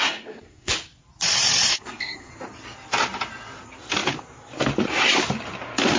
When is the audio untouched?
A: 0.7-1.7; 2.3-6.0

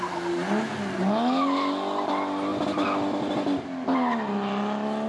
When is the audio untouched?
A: 0.0-5.1

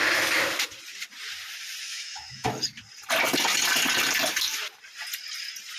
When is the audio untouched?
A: 0.0-1.9; 2.5-5.8

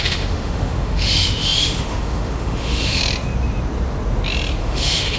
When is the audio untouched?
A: 3.0-4.6

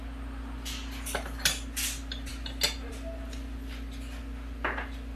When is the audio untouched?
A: 0.0-5.2

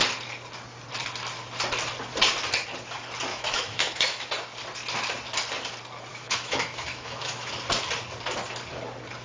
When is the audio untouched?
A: 0.0-3.3; 4.3-6.1; 7.5-9.2